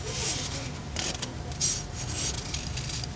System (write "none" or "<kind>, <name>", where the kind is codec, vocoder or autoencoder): none